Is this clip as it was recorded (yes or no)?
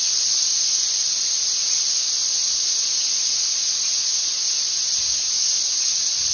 yes